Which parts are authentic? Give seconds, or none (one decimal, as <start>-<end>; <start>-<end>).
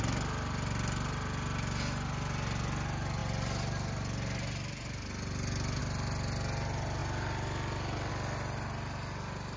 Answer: 0.0-9.6